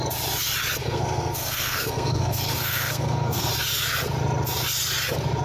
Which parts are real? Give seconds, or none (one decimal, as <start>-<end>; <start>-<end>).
0.0-0.8; 3.5-5.4